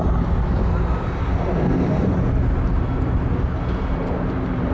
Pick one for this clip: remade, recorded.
recorded